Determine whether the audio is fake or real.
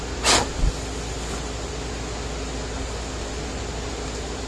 real